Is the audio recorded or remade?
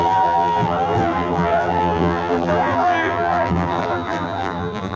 remade